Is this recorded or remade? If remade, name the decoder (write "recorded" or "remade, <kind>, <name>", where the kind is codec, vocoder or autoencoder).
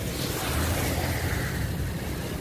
recorded